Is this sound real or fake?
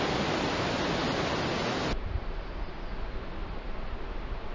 real